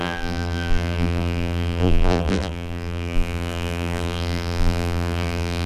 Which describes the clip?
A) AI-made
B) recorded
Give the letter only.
A